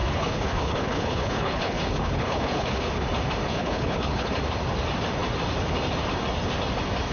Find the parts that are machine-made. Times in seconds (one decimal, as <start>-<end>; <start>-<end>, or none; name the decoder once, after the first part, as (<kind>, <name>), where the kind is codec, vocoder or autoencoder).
0.0-2.9 (codec, HILCodec); 3.5-4.3